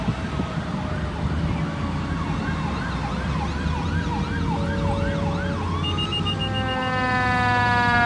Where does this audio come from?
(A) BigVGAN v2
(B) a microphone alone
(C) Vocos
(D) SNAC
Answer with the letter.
B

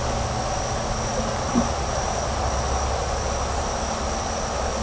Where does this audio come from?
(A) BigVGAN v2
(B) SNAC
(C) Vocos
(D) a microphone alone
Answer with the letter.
D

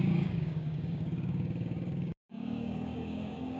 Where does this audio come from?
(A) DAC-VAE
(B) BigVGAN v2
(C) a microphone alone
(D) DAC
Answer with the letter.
D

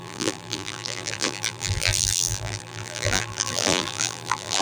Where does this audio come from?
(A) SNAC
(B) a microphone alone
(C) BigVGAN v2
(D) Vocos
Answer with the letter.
C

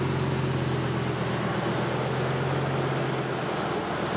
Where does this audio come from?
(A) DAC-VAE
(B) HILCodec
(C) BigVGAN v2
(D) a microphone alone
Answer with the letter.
D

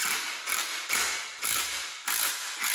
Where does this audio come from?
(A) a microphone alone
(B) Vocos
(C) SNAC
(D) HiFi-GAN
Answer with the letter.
A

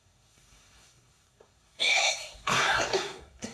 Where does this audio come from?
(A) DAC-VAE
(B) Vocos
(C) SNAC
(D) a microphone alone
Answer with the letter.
C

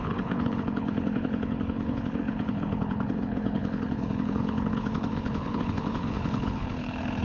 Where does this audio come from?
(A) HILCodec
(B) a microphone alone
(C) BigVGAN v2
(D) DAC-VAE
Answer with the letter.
A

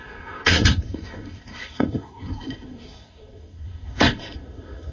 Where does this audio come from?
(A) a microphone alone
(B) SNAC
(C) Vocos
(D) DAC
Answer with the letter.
B